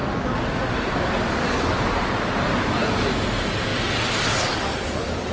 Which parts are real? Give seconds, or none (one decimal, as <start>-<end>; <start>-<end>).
0.0-5.3